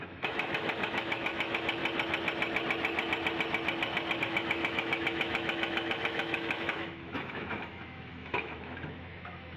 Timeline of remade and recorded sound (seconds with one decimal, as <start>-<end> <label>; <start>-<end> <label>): 0.0-1.8 remade; 1.8-4.2 recorded; 4.2-9.6 remade